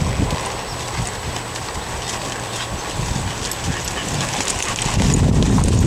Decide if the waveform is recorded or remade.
recorded